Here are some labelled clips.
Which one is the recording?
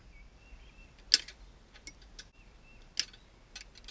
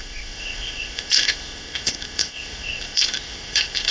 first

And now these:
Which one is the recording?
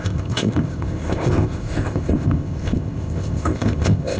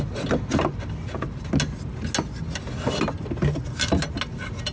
second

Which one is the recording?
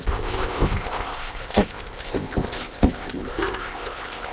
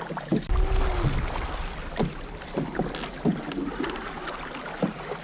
second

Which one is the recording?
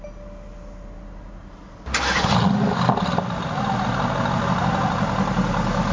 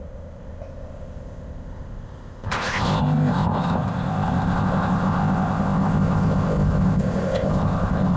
first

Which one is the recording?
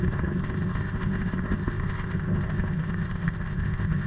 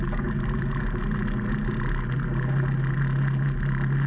second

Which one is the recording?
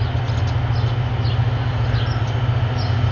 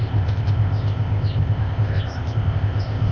first